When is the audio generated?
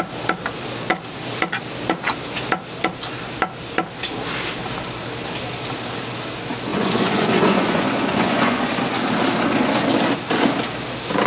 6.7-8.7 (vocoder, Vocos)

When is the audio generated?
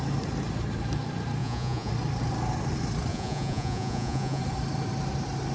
1.4-1.9 (vocoder, Vocos); 3.1-4.4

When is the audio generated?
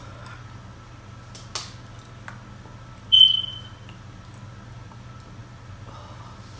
none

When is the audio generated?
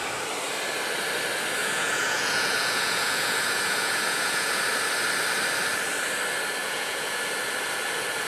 1.6-4.6 (vocoder, Vocos); 6.6-7.2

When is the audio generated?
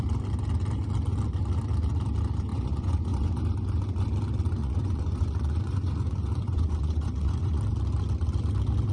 2.5-3.4 (vocoder, Vocos); 4.6-7.6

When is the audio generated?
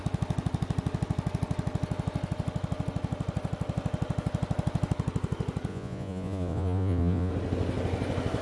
5.7-7.3 (vocoder, Vocos)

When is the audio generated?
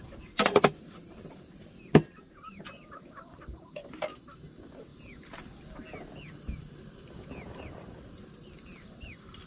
none